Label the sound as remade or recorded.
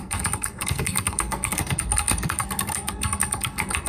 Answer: remade